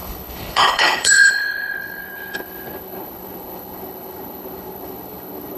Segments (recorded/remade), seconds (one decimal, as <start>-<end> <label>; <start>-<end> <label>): 0.0-5.6 remade